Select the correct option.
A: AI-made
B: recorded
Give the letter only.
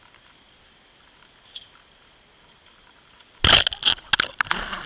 B